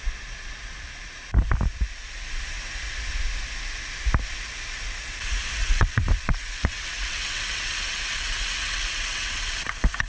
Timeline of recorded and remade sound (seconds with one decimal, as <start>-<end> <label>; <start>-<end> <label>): 0.0-5.6 recorded; 5.6-10.1 remade